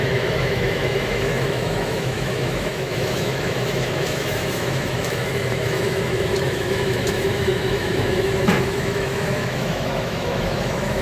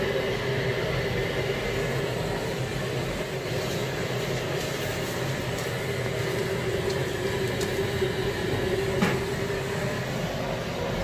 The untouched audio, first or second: second